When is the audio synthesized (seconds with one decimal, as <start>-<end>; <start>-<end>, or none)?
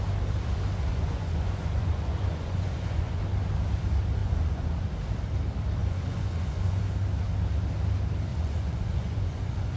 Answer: 0.9-3.2; 4.2-4.9; 5.8-6.8; 8.3-9.8